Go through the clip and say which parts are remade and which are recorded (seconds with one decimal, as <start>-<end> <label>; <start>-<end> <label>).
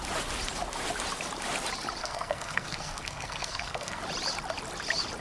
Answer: 0.0-2.0 recorded; 2.0-4.0 remade; 4.0-5.2 recorded